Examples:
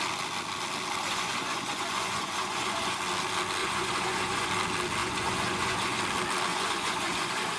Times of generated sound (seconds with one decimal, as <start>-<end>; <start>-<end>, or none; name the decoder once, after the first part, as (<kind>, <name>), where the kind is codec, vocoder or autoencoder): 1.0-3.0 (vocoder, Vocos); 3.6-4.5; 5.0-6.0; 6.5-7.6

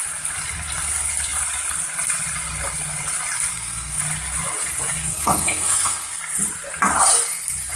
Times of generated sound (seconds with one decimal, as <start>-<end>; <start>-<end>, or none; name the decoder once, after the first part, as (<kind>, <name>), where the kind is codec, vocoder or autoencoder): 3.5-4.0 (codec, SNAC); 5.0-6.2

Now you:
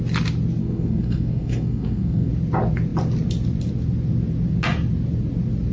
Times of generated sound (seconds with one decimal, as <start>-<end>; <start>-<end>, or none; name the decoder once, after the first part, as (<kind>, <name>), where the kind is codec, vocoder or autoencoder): 0.6-2.3 (codec, SNAC)